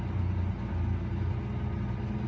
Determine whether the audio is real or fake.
real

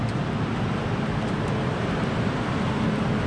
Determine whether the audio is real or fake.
real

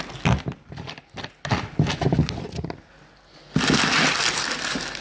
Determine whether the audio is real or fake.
real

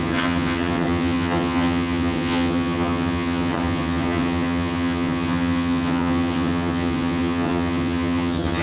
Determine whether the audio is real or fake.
fake